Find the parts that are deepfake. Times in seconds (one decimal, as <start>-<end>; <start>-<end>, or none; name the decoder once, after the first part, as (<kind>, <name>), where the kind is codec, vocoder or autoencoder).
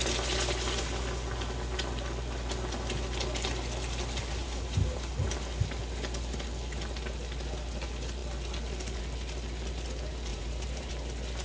4.4-5.1 (vocoder, BigVGAN v2); 10.3-10.9